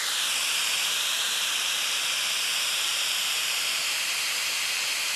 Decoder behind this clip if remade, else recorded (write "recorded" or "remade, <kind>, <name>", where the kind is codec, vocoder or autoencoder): remade, vocoder, BigVGAN v2